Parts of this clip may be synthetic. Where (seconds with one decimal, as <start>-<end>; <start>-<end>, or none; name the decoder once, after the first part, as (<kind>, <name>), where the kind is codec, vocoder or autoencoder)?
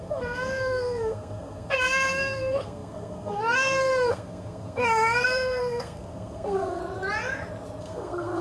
0.0-6.8 (codec, SNAC); 7.8-8.4